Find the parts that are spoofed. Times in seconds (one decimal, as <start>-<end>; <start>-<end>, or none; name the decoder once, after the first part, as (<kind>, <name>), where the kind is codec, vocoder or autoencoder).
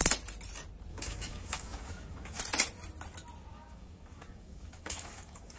0.9-2.4 (codec, DAC); 3.5-5.6